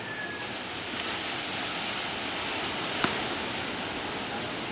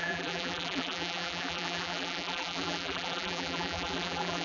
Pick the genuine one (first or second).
first